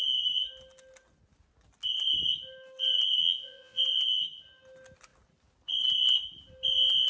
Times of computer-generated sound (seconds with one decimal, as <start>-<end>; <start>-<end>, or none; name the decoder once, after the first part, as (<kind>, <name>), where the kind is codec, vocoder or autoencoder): 3.2-3.8 (vocoder, Vocos)